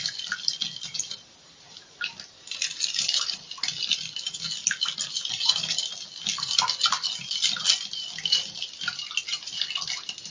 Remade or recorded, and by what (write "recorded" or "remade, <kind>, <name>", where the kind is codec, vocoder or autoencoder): recorded